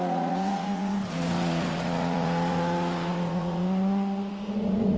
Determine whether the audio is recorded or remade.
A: remade